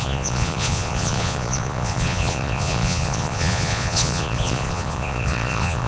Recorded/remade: remade